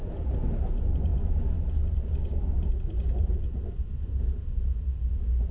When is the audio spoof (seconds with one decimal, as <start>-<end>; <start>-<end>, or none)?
none